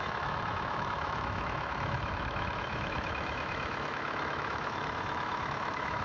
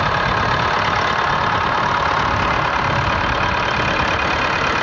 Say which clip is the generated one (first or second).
first